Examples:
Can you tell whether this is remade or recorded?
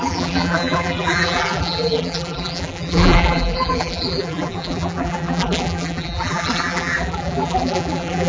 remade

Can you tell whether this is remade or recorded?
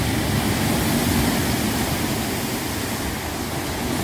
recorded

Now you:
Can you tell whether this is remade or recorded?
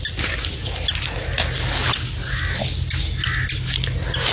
recorded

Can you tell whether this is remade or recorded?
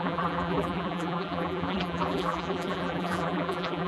remade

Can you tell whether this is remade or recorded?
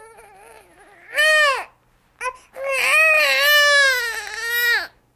recorded